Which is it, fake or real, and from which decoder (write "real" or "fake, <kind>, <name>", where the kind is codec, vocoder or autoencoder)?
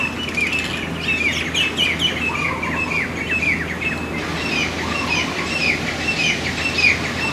real